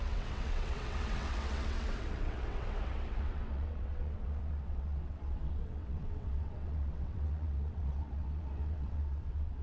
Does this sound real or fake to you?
fake